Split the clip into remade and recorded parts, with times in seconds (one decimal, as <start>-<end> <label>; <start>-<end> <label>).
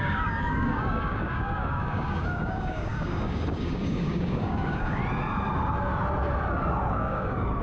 0.0-5.0 remade; 5.0-6.9 recorded; 6.9-7.6 remade